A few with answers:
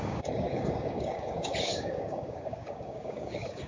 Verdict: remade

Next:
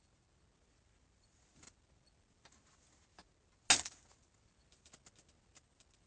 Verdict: recorded